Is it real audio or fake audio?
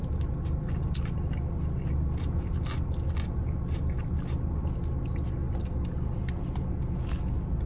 real